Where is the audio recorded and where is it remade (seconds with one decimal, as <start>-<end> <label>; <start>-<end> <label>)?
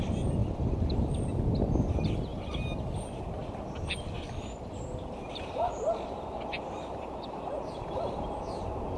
0.0-0.4 recorded; 0.4-0.9 remade; 0.9-3.4 recorded; 3.4-8.6 remade; 8.6-9.0 recorded